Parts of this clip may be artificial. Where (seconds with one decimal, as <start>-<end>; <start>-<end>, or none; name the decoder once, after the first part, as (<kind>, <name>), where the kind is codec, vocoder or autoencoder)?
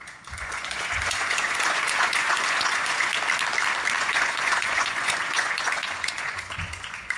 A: 0.0-3.1 (vocoder, Vocos); 4.0-7.2